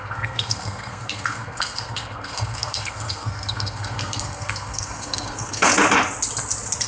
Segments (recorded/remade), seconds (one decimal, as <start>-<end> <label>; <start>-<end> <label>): 0.0-5.7 remade; 5.7-6.9 recorded